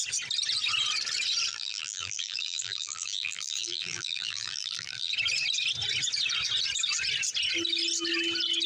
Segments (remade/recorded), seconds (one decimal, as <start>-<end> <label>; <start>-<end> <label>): 0.0-1.5 recorded; 1.5-5.1 remade; 5.1-8.7 recorded